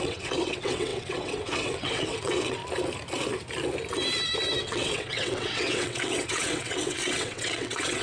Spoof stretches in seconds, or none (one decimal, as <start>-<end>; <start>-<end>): 0.0-2.6; 4.6-8.0